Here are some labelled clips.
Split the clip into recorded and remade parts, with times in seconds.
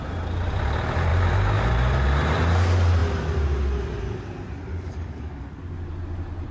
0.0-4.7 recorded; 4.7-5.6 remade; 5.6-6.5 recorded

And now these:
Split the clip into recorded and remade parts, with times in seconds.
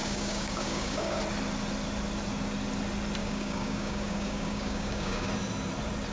0.0-1.2 remade; 1.2-3.2 recorded; 3.2-5.3 remade; 5.3-6.1 recorded